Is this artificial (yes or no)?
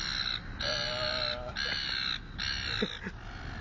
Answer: no